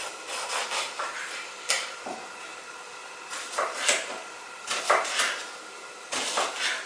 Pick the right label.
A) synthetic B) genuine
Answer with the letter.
B